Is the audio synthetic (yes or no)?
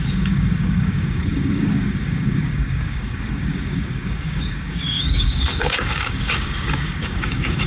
yes